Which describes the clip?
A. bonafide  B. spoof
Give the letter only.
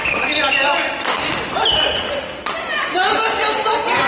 A